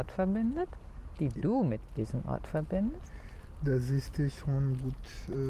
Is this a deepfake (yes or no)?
no